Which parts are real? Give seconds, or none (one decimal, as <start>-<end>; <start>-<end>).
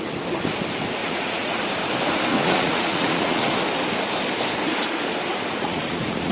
0.0-1.0; 1.6-2.3; 3.5-5.3